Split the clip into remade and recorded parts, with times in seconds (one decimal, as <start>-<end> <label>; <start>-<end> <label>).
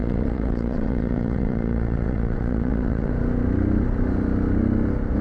0.0-3.1 remade; 3.1-5.2 recorded